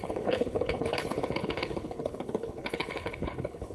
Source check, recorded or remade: remade